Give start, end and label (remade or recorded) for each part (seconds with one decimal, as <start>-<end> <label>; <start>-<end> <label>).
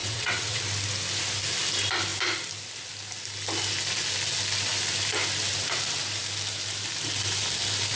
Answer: 0.0-0.6 remade; 0.6-8.0 recorded